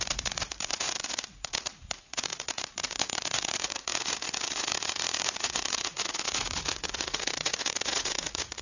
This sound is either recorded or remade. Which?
remade